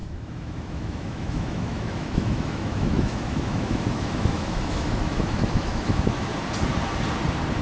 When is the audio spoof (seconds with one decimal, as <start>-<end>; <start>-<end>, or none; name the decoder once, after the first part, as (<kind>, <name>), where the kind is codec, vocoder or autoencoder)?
0.0-6.3 (autoencoder, DAC-VAE)